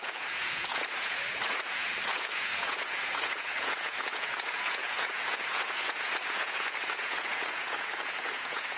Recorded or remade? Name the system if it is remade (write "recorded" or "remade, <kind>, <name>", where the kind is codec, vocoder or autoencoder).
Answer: remade, vocoder, Vocos